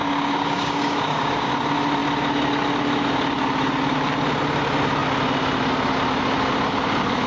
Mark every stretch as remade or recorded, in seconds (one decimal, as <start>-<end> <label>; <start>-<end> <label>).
0.0-1.5 remade; 1.5-7.3 recorded